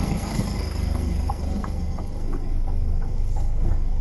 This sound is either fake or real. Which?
fake